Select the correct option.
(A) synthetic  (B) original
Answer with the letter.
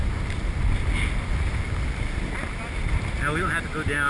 B